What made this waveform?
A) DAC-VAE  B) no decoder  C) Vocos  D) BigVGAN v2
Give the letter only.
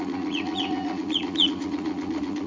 C